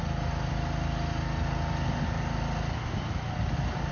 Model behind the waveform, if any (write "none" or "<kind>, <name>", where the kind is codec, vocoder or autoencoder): none